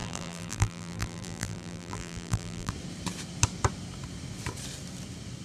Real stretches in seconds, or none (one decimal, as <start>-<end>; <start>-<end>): 2.7-5.4

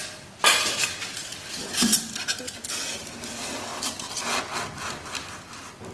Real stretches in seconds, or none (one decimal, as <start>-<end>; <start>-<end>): 0.0-5.9

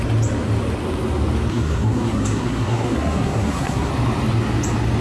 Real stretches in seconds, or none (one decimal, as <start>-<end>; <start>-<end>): 0.0-1.5; 3.9-5.0

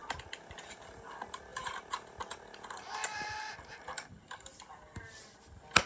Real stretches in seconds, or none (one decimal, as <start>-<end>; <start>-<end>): 0.0-5.9

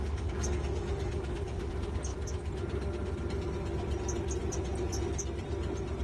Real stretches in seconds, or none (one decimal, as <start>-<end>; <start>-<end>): 1.7-6.0

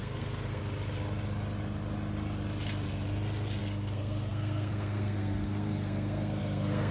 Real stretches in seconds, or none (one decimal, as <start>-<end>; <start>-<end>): 0.6-3.6